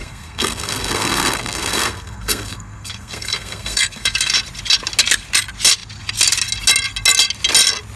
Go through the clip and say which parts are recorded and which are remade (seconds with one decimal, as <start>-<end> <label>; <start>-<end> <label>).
0.0-4.3 remade; 4.3-8.0 recorded